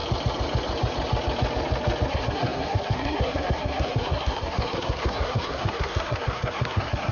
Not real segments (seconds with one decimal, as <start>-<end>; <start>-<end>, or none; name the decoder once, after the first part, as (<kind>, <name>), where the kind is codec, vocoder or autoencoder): 2.1-7.1 (codec, SNAC)